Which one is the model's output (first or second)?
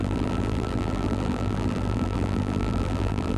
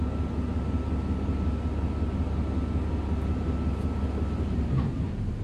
first